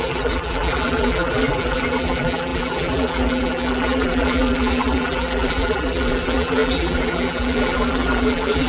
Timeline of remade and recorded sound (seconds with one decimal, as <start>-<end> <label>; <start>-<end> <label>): 0.0-8.7 remade